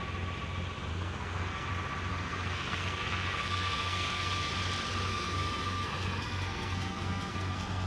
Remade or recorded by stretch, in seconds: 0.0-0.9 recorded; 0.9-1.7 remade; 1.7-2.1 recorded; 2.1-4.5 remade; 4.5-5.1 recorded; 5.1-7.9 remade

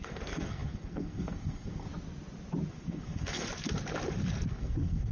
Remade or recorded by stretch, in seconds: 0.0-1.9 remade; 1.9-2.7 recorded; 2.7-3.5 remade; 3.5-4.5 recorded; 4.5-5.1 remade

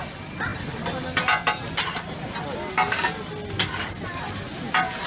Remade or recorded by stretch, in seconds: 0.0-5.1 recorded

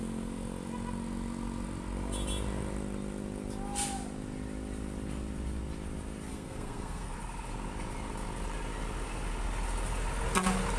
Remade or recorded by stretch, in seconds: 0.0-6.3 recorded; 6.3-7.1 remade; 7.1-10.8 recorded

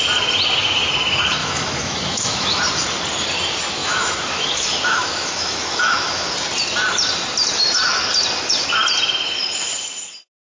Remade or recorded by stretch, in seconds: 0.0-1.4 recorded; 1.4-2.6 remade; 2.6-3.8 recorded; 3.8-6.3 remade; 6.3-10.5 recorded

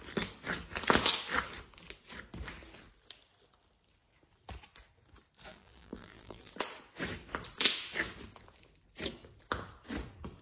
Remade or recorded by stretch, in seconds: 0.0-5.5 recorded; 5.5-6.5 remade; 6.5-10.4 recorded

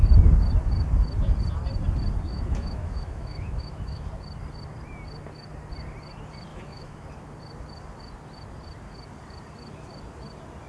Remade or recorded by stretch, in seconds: 0.0-2.3 recorded; 2.3-4.1 remade; 4.1-6.5 recorded; 6.5-7.1 remade; 7.1-10.7 recorded

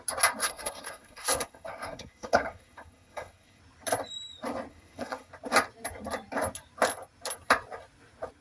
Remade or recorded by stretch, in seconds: 0.0-0.4 recorded; 0.4-3.6 remade; 3.6-4.7 recorded; 4.7-5.3 remade; 5.3-8.4 recorded